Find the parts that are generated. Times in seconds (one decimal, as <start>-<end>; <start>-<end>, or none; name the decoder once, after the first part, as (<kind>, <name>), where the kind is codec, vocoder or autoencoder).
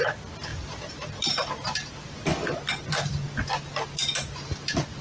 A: 0.5-1.2 (vocoder, BigVGAN v2)